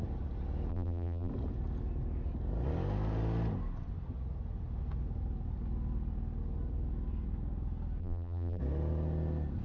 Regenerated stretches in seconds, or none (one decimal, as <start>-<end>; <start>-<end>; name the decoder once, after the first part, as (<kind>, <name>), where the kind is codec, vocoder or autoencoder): 0.7-1.3 (vocoder, BigVGAN v2); 8.0-8.6